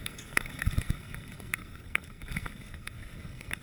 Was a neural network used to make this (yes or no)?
yes